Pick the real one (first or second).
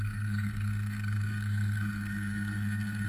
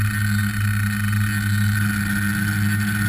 second